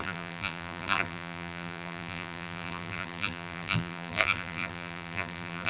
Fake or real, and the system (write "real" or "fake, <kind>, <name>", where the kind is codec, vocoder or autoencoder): fake, vocoder, BigVGAN v2